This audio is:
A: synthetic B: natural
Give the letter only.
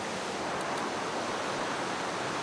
B